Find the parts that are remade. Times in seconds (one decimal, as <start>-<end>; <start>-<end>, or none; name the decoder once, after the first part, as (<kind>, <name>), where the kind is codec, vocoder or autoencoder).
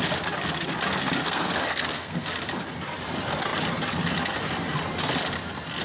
1.2-2.3 (codec, SNAC)